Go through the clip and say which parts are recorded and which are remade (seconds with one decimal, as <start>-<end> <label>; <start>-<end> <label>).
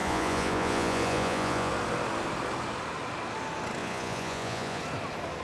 0.0-1.7 remade; 1.7-3.8 recorded; 3.8-4.8 remade; 4.8-5.4 recorded